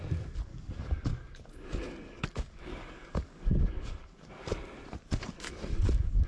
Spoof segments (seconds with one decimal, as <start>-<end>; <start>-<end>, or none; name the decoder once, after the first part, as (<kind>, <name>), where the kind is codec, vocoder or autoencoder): 0.5-4.3 (codec, DAC); 5.0-6.3